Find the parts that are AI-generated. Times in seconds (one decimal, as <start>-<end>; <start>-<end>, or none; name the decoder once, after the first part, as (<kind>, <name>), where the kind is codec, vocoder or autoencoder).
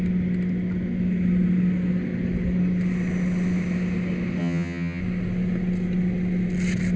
4.4-5.0 (vocoder, HiFi-GAN)